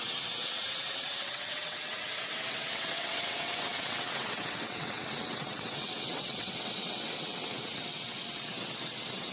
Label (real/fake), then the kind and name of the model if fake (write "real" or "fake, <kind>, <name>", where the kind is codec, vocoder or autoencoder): fake, vocoder, WaveNeXt